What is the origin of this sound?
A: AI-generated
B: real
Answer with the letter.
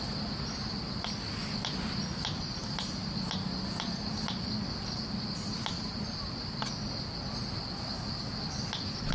B